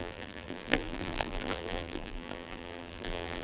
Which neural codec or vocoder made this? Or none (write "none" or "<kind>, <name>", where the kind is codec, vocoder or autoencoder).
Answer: vocoder, BigVGAN v2